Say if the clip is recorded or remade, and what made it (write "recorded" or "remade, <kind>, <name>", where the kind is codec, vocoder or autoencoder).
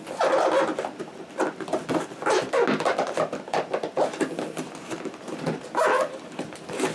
recorded